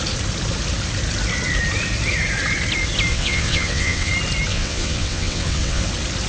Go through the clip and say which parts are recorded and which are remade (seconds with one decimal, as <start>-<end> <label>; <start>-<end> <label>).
0.0-3.1 recorded; 3.1-4.1 remade; 4.1-4.5 recorded; 4.5-5.8 remade; 5.8-6.3 recorded